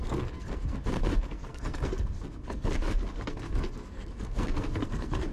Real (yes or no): no